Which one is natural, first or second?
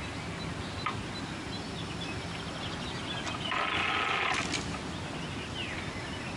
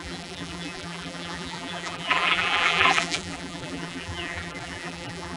first